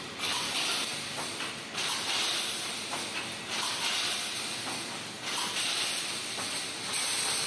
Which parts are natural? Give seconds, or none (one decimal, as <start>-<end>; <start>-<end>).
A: 0.0-7.5

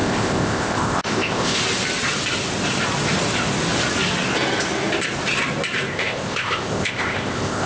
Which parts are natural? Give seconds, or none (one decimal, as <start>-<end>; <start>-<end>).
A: 1.6-5.9

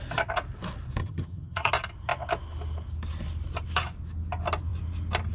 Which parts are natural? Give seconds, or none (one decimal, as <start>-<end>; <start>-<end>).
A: 0.0-1.0; 1.7-5.3

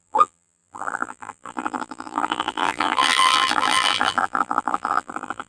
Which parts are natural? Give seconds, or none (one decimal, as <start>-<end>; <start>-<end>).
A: none

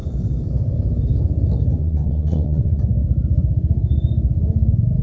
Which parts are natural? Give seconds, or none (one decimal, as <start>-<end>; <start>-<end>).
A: 0.0-1.8; 2.8-5.0

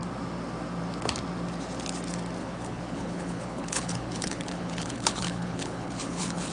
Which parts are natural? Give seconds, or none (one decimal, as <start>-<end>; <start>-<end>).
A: 0.0-2.4

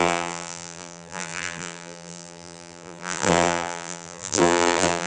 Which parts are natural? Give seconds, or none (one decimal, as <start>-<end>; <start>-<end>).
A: none

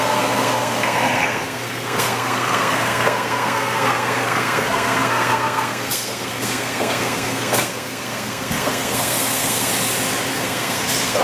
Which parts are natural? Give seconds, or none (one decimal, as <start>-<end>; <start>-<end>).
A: 9.7-10.3